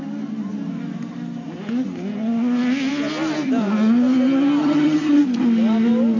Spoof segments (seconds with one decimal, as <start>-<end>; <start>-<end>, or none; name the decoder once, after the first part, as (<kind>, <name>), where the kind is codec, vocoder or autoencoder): 4.6-5.2 (vocoder, HiFi-GAN)